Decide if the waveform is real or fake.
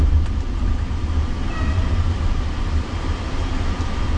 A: real